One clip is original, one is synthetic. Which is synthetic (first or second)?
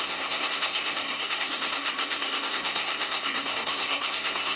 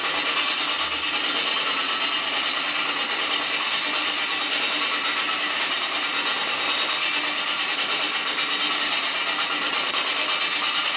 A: first